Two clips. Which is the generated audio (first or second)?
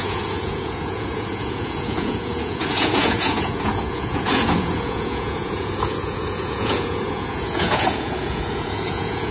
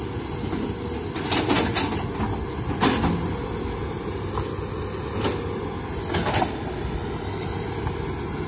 first